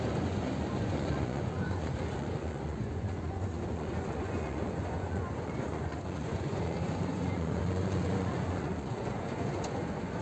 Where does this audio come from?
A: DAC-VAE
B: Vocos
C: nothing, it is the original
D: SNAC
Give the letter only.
B